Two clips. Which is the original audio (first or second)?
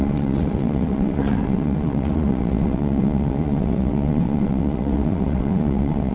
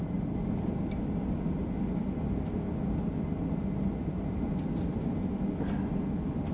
second